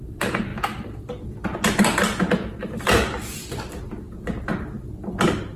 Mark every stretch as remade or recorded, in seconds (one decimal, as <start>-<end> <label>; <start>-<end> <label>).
0.0-0.5 remade; 0.5-2.6 recorded; 2.6-3.4 remade; 3.4-5.6 recorded